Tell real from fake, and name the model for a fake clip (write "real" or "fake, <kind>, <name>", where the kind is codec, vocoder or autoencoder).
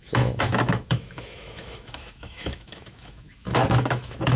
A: fake, autoencoder, DAC-VAE